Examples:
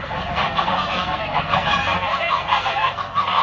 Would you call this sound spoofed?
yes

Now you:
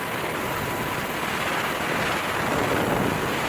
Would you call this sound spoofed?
no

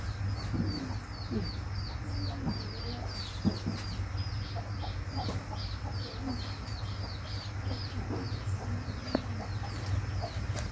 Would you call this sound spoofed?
no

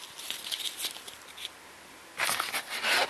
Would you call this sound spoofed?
no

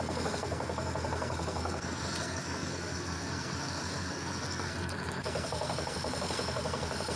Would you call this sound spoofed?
yes